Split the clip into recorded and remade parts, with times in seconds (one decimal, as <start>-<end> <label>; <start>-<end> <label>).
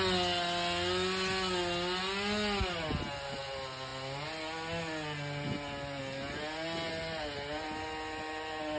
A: 0.0-8.8 recorded